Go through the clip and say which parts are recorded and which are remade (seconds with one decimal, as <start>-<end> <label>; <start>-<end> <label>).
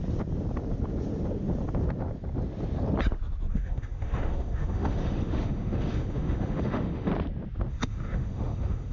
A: 0.0-3.5 recorded; 3.5-7.1 remade; 7.1-7.7 recorded; 7.7-8.9 remade